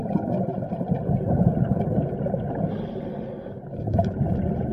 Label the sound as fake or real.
real